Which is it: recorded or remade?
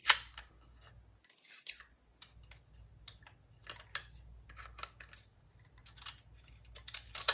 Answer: recorded